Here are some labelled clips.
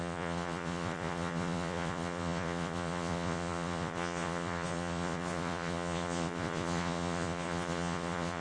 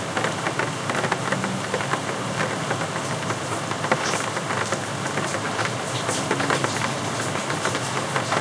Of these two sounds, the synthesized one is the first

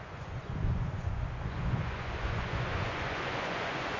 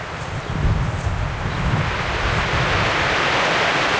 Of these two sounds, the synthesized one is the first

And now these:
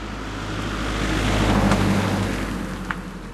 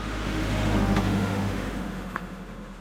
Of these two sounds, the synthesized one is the second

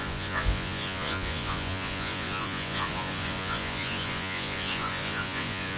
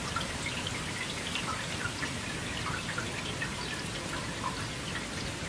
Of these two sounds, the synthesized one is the first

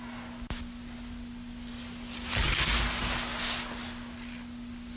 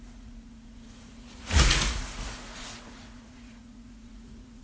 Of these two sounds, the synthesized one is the second